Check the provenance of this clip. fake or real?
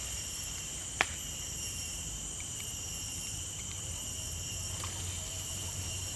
fake